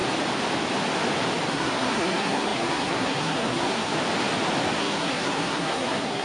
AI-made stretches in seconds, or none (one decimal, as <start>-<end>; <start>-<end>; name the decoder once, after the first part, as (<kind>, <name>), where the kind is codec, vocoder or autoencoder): 1.5-3.9 (codec, SNAC); 4.8-6.2